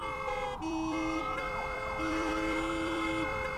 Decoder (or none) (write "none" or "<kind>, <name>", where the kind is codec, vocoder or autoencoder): vocoder, BigVGAN v2